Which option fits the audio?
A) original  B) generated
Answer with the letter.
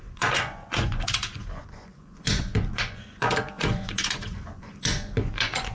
B